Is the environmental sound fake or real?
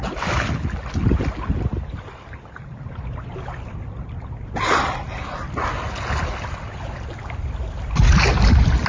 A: real